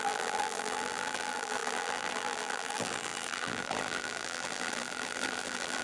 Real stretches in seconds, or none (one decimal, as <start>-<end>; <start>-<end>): none